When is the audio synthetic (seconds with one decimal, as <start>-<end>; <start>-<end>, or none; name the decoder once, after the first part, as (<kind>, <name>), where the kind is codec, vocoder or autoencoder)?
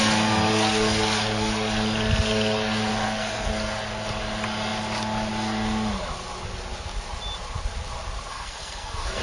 2.9-3.5 (codec, SNAC); 8.3-9.2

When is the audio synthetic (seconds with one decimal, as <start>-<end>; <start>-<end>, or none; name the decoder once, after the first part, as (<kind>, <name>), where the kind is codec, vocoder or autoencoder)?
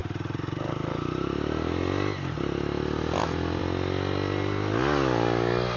none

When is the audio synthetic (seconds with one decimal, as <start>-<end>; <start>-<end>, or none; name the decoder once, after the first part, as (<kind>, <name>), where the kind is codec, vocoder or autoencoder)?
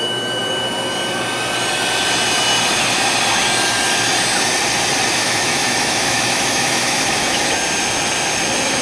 5.2-7.4 (autoencoder, DAC-VAE)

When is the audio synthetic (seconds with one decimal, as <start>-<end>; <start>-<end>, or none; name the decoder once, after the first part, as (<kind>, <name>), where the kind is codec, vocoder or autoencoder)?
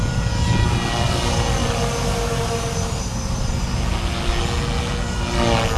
none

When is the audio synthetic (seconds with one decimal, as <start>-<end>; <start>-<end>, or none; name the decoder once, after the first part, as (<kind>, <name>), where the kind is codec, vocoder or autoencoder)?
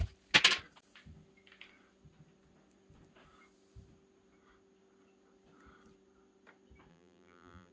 6.9-7.7 (vocoder, BigVGAN v2)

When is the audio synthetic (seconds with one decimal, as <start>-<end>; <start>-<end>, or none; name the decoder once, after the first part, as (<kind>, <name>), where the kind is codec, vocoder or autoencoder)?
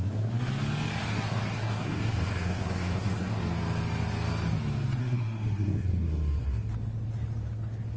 1.1-3.4 (codec, SNAC); 5.0-6.7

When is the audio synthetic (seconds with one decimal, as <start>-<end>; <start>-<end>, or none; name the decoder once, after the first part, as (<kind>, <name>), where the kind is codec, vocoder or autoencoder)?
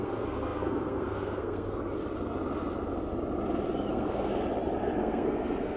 0.0-1.8 (codec, SNAC); 3.9-4.3; 5.0-5.8